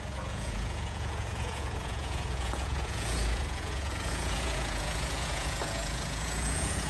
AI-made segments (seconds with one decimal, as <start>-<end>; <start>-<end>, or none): 0.0-6.9